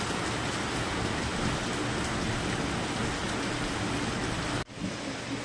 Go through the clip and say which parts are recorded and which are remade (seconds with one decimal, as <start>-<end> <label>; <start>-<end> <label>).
0.0-5.4 recorded

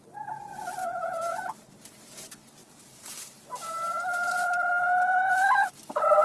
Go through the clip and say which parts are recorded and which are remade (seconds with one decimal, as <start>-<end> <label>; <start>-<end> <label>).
0.0-0.8 recorded; 0.8-1.3 remade; 1.3-2.6 recorded; 2.6-5.7 remade; 5.7-6.2 recorded

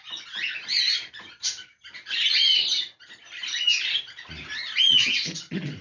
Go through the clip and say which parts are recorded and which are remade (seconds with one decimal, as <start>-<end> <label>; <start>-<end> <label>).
0.0-5.8 recorded

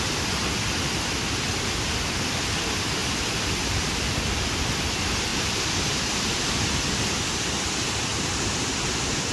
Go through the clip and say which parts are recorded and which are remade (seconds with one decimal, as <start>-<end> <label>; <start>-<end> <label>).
0.0-3.0 recorded; 3.0-4.1 remade; 4.1-9.3 recorded

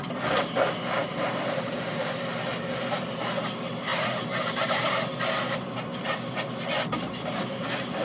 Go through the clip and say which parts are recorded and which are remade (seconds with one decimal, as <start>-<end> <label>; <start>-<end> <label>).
0.0-1.0 recorded; 1.0-2.0 remade; 2.0-3.9 recorded; 3.9-5.0 remade; 5.0-8.0 recorded